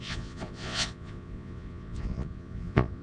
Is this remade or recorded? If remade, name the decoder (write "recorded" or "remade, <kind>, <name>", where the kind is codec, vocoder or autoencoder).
remade, vocoder, Vocos